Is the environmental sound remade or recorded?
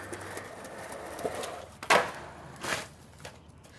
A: recorded